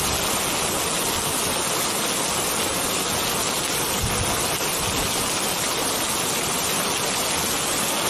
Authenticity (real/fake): real